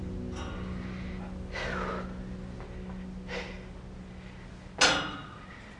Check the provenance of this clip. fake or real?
real